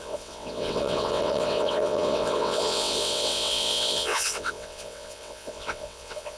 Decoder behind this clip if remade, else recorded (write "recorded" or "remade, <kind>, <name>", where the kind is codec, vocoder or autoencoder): remade, vocoder, WaveNeXt